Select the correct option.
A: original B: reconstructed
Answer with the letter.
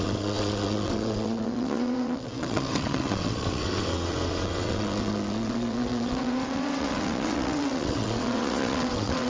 B